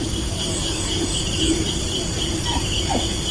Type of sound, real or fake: real